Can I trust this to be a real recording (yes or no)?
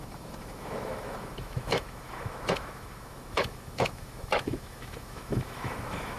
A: no